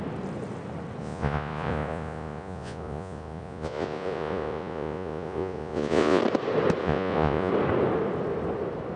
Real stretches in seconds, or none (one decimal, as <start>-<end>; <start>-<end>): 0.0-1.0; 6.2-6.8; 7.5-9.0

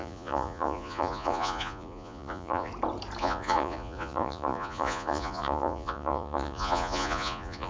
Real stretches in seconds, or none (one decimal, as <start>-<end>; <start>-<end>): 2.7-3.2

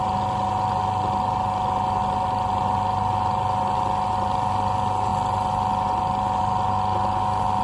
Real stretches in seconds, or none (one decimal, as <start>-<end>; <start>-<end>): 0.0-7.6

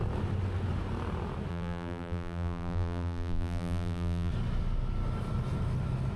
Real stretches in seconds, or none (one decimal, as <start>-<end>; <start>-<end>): 0.0-1.5; 4.3-6.2